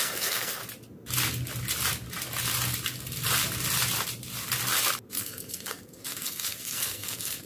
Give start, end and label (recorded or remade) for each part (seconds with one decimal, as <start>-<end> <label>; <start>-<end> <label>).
0.0-0.6 remade; 0.6-5.1 recorded; 5.1-7.5 remade